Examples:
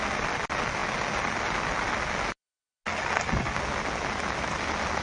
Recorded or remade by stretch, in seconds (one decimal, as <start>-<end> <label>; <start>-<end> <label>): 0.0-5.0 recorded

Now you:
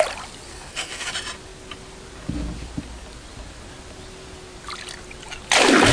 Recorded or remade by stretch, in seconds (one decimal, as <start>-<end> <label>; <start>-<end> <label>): 0.0-0.5 recorded; 0.5-1.1 remade; 1.1-5.9 recorded

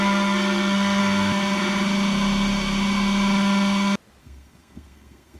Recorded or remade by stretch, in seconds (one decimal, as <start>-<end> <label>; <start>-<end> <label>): 0.0-1.0 remade; 1.0-4.2 recorded; 4.2-5.4 remade